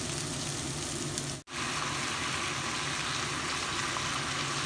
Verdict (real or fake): real